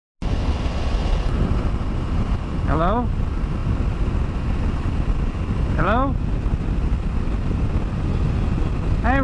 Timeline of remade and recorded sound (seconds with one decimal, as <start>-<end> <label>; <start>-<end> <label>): 0.0-9.2 recorded

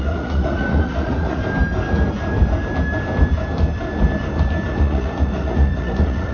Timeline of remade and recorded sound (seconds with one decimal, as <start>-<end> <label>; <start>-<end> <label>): 0.0-1.4 remade; 1.4-4.7 recorded; 4.7-6.3 remade

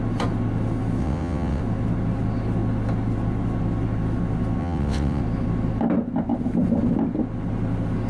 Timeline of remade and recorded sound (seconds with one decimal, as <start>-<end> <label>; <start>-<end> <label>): 0.0-1.0 recorded; 1.0-1.6 remade; 1.6-4.6 recorded; 4.6-5.2 remade; 5.2-8.1 recorded

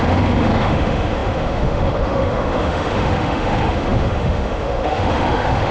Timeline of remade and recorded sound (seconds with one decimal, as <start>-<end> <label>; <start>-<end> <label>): 0.0-5.7 remade